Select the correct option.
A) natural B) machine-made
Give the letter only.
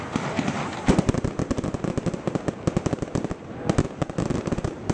A